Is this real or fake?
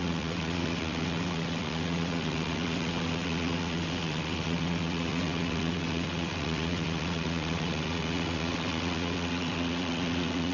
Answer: fake